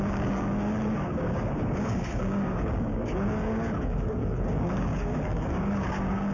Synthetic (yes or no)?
yes